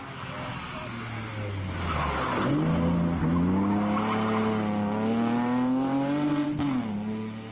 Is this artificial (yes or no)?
no